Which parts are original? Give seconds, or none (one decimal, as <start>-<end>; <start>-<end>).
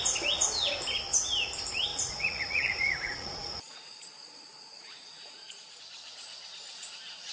0.0-1.9; 5.8-7.3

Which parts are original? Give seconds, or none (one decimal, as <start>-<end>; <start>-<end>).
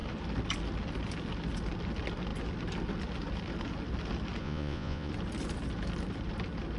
0.0-4.4; 5.1-6.8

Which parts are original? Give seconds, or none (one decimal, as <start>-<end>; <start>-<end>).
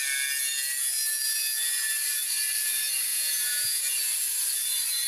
0.0-3.1; 3.8-5.1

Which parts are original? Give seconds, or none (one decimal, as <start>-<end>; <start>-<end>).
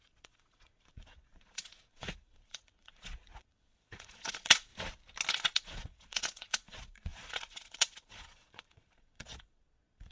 4.7-5.3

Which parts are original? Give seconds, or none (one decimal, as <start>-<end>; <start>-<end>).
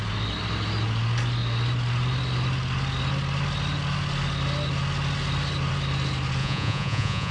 0.0-6.4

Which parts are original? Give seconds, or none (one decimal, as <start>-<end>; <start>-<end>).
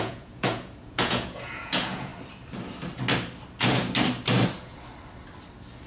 2.1-5.9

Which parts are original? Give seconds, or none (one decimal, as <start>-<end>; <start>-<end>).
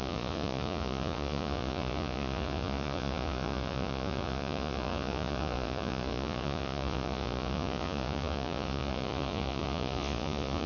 none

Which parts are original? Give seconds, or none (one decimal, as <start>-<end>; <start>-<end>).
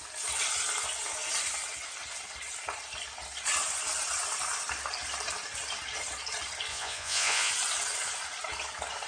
0.0-6.7; 7.5-9.1